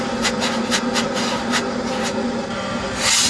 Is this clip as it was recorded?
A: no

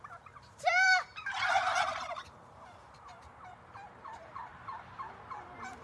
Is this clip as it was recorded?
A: no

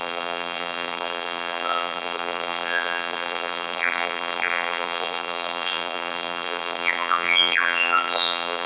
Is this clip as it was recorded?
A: no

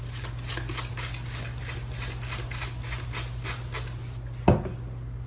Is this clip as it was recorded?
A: yes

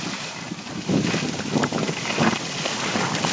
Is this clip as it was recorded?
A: yes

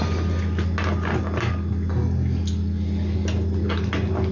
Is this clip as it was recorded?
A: yes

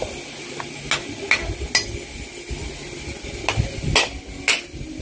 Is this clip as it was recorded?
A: yes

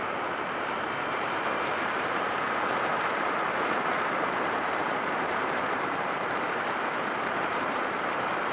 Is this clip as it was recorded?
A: no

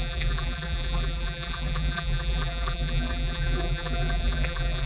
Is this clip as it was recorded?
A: no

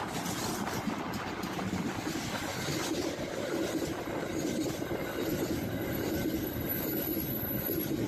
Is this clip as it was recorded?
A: yes